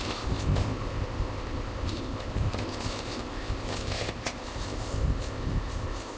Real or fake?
fake